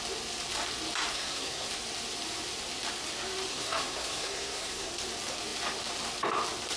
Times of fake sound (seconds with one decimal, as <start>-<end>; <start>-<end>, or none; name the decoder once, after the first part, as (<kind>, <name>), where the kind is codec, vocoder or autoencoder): 1.1-1.7 (codec, SNAC); 3.5-4.9